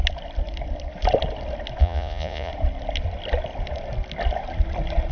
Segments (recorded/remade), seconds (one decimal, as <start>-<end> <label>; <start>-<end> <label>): 0.0-1.8 recorded; 1.8-2.5 remade; 2.5-5.1 recorded